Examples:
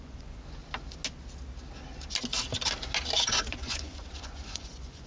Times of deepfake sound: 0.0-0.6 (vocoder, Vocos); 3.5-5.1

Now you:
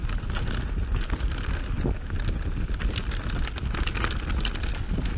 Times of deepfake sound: none

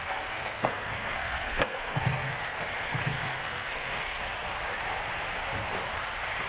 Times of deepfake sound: 0.0-2.6 (codec, SNAC); 3.0-4.2

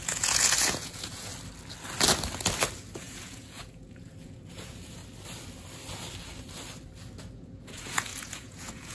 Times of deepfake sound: 0.0-1.3 (vocoder, Vocos); 3.0-5.0; 7.2-8.9

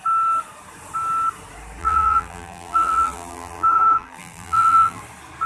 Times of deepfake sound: 1.8-5.0 (vocoder, BigVGAN v2)